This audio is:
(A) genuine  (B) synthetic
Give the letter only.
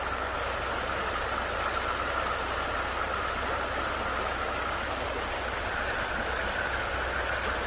A